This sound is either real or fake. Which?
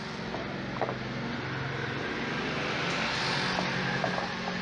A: real